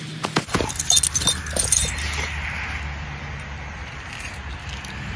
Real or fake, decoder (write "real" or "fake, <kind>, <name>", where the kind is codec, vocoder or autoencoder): real